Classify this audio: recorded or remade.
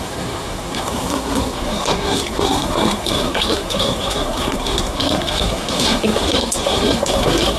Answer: remade